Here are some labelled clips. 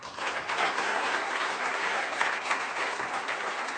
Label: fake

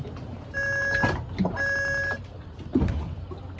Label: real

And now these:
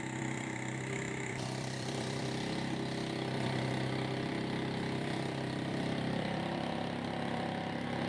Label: fake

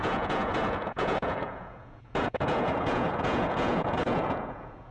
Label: fake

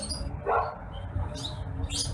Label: real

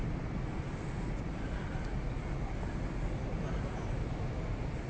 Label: real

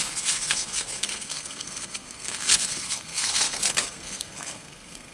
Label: fake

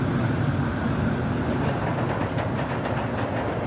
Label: real